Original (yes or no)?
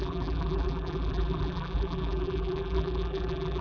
no